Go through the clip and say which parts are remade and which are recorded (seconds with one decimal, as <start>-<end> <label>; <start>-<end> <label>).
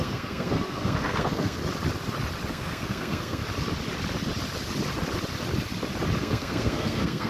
0.0-1.6 remade; 1.6-2.5 recorded; 2.5-3.4 remade; 3.4-6.2 recorded; 6.2-7.3 remade